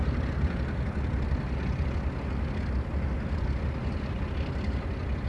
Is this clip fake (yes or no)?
no